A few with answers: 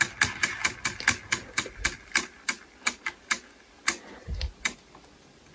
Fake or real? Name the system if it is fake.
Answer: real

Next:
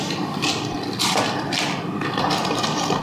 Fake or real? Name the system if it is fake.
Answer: fake, vocoder, BigVGAN v2